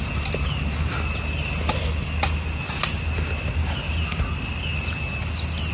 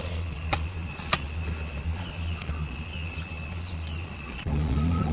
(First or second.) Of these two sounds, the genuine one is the first